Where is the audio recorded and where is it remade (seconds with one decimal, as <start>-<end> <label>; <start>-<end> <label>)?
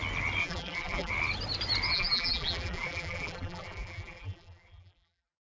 0.0-0.4 recorded; 0.4-1.1 remade; 1.1-1.9 recorded; 1.9-5.5 remade